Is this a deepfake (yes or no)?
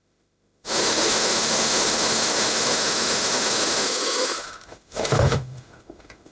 yes